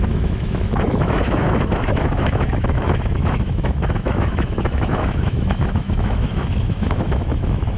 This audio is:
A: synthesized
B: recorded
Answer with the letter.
A